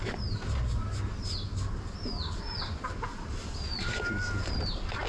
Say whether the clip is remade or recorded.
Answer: recorded